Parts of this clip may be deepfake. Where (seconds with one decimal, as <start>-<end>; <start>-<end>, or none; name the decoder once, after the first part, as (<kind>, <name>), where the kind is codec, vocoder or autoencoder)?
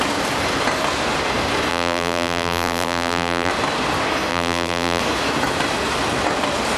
1.7-3.5 (vocoder, BigVGAN v2); 4.3-5.0